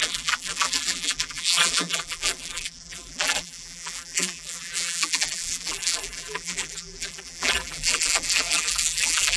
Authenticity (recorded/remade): remade